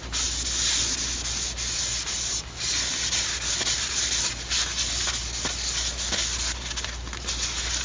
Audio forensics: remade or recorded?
recorded